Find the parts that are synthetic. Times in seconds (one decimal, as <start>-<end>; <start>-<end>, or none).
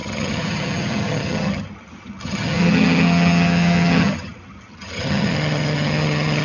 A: 0.0-6.4